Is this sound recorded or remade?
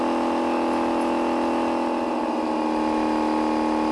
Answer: recorded